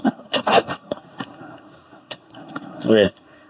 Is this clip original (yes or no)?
no